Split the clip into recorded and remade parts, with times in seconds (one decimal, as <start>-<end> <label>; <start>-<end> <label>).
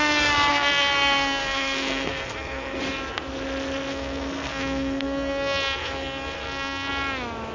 0.0-0.5 recorded; 0.5-2.8 remade; 2.8-3.9 recorded; 3.9-6.9 remade; 6.9-7.5 recorded